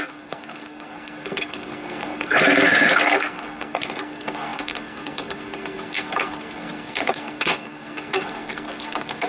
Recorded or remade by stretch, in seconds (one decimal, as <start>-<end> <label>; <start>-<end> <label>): 0.0-9.3 remade